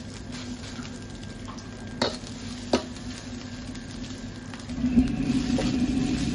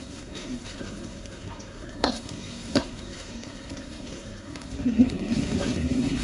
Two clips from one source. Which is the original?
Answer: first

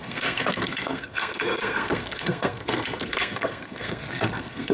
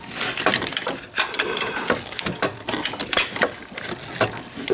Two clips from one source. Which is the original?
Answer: second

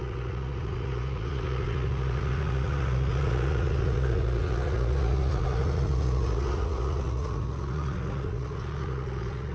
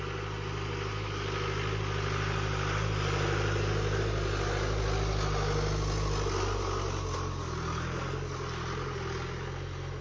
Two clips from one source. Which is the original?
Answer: second